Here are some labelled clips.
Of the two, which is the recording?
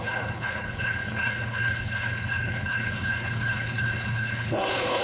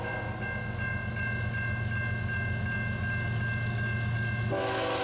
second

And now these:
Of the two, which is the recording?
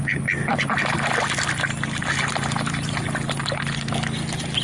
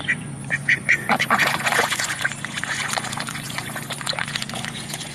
first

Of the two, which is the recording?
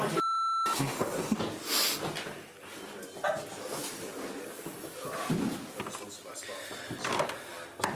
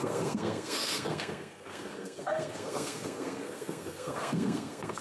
first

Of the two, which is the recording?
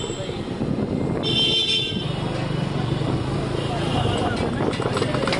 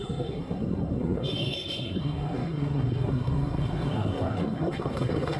first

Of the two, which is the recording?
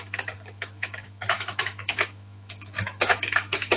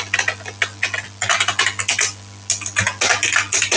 second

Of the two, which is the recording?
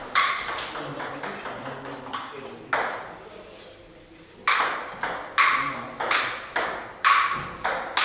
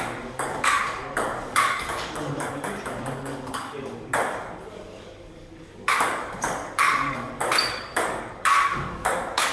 first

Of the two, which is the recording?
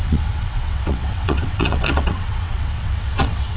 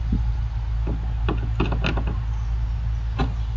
second